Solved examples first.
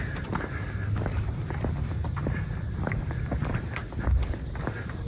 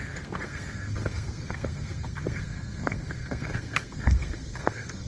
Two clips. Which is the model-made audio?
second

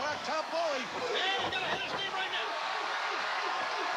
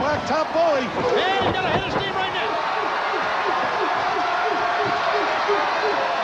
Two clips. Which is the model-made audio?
first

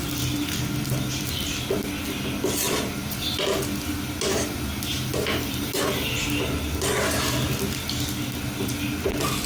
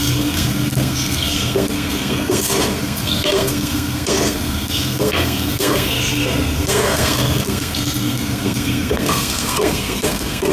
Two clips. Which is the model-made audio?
second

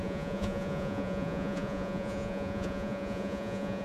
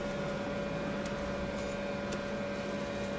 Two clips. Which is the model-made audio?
first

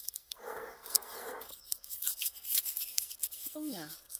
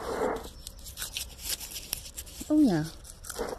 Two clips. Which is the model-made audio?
first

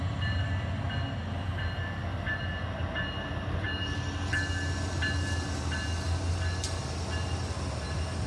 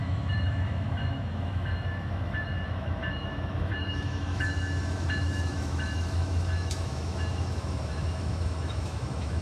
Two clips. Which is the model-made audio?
second